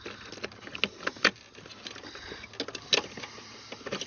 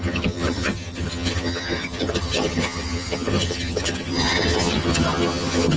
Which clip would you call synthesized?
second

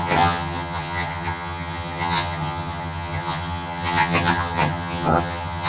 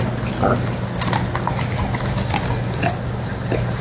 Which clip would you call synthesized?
first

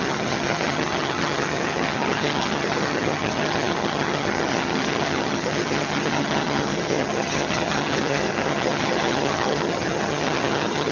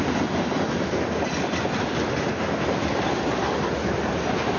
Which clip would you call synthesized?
first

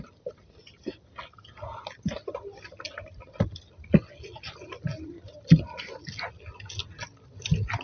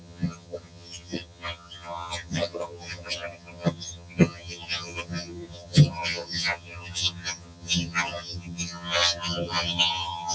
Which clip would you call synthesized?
second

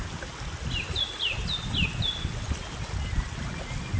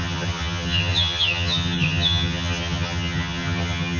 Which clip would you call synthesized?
second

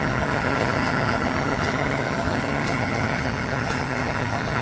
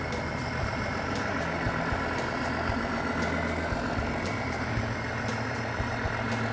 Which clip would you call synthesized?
first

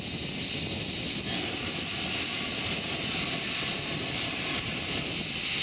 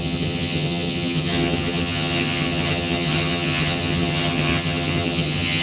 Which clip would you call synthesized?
second